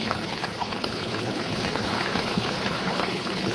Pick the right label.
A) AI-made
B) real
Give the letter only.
A